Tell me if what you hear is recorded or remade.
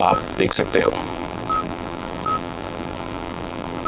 remade